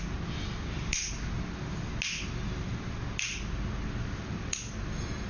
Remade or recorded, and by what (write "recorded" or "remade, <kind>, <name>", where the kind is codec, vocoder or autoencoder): recorded